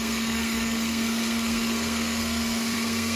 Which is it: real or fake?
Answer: fake